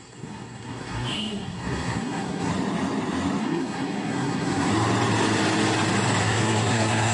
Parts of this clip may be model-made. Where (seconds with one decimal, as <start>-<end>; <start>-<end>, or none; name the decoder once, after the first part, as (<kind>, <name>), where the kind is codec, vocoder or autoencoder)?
0.0-2.5 (codec, SNAC); 3.4-4.7; 6.2-7.1